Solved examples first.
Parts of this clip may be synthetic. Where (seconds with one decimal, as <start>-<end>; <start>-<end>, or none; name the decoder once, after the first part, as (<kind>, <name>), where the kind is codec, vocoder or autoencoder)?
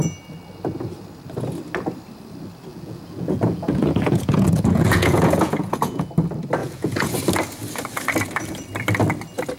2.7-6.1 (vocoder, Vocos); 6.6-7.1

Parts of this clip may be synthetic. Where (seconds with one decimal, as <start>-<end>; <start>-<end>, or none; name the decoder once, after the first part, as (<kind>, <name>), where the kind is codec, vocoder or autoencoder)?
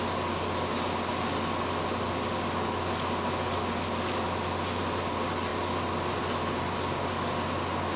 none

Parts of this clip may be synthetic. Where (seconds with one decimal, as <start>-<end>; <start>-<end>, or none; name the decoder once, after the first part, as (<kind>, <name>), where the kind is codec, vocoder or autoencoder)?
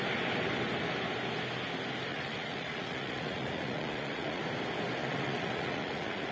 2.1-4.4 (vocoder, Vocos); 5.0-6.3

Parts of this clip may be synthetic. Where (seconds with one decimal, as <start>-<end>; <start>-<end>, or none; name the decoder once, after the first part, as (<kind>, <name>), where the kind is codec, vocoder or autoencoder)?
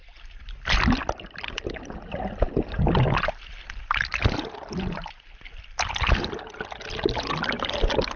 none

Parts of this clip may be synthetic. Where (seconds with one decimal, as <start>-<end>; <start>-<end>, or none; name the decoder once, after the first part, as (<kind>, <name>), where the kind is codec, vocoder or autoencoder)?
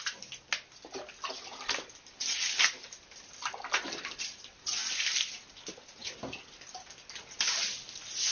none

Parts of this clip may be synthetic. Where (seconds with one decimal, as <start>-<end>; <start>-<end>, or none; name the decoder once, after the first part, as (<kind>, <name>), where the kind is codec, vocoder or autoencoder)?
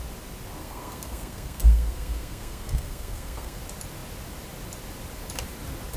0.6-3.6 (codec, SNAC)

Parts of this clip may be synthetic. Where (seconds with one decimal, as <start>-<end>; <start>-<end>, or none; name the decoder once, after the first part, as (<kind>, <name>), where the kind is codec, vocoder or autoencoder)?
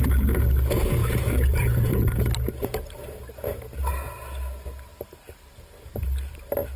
1.0-2.2 (vocoder, BigVGAN v2); 4.9-6.3